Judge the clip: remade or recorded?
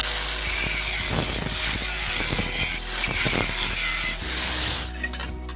recorded